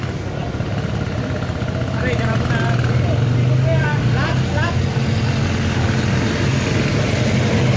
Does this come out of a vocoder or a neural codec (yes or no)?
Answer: no